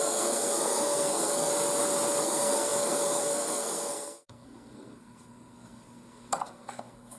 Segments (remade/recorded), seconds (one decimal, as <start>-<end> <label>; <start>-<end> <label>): 0.0-1.5 remade; 1.5-2.2 recorded; 2.2-7.2 remade